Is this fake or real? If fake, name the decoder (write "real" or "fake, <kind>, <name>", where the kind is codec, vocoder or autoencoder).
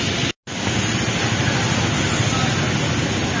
real